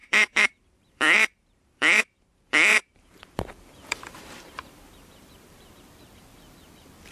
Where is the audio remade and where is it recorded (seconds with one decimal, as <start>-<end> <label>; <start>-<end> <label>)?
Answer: 0.0-2.0 remade; 2.0-2.7 recorded; 2.7-5.9 remade; 5.9-7.1 recorded